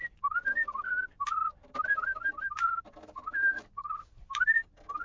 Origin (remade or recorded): recorded